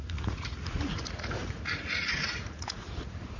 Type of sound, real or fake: fake